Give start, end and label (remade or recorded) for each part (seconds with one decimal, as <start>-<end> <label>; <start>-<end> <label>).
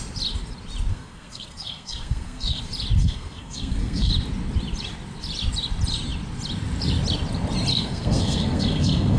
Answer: 0.0-0.9 recorded; 0.9-2.6 remade; 2.6-3.0 recorded; 3.0-4.1 remade; 4.1-7.7 recorded; 7.7-9.2 remade